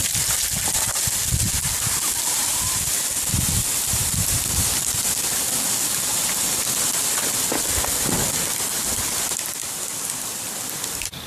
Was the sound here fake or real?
real